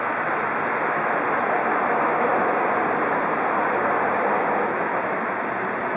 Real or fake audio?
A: real